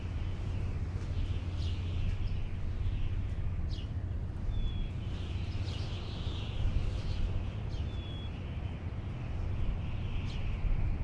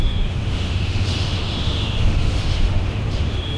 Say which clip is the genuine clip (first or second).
first